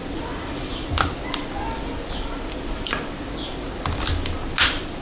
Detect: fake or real real